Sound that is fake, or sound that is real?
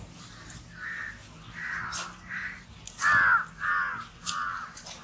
real